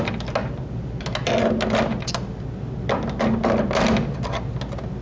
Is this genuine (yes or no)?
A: yes